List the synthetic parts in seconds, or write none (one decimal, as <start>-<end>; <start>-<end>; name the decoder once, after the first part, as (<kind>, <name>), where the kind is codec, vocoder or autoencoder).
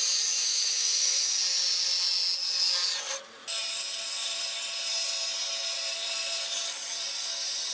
0.4-1.4 (autoencoder, DAC-VAE)